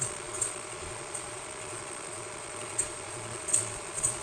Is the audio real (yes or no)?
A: no